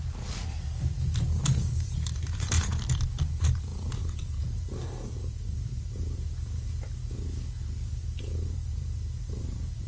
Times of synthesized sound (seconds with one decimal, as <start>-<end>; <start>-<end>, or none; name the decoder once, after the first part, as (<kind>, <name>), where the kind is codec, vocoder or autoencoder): 0.0-2.7 (vocoder, BigVGAN v2); 3.3-7.0; 8.2-9.9